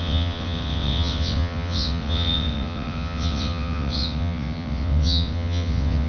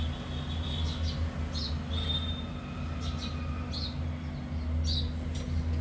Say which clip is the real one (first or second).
second